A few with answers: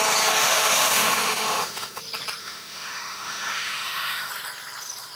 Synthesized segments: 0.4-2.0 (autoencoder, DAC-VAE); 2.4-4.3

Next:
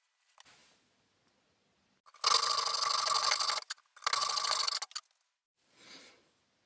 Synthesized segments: none

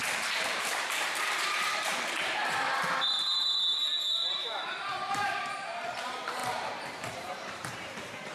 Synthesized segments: 0.0-1.9 (vocoder, BigVGAN v2); 4.3-8.3

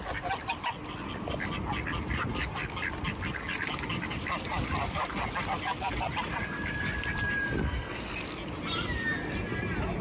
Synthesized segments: none

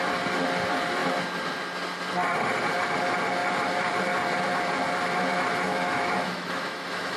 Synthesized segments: 5.7-7.2 (autoencoder, DAC-VAE)